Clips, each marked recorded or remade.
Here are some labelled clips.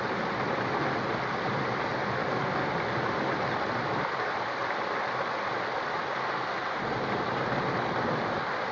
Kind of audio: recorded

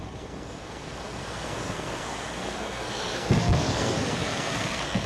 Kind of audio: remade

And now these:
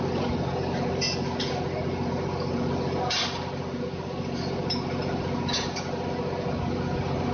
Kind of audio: recorded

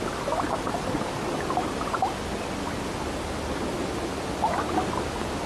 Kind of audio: recorded